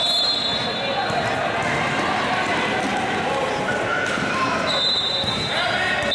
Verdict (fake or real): real